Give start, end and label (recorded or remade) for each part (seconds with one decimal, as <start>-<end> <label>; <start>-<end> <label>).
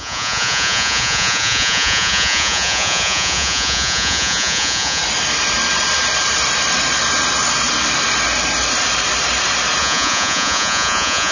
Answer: 0.0-5.0 remade; 5.0-9.8 recorded; 9.8-11.3 remade